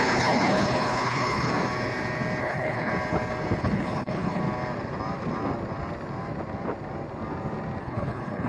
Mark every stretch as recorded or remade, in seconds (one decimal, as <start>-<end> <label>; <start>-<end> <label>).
0.0-1.5 remade; 1.5-2.4 recorded; 2.4-2.9 remade; 2.9-3.6 recorded; 3.6-4.4 remade; 4.4-7.8 recorded; 7.8-8.5 remade